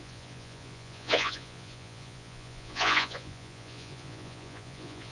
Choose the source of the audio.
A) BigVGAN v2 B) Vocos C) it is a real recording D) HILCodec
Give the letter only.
B